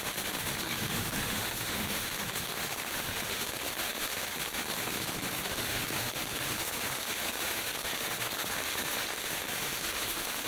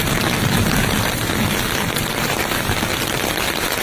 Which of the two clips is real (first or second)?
second